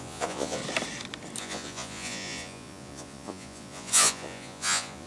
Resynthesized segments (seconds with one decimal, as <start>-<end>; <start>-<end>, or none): 0.0-0.6; 1.4-5.1